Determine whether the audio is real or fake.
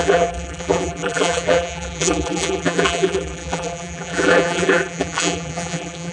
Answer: fake